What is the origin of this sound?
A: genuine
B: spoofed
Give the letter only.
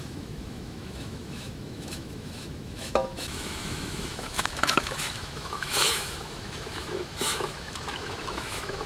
B